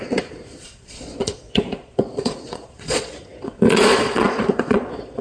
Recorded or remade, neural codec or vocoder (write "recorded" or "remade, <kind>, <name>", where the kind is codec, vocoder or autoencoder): remade, vocoder, Vocos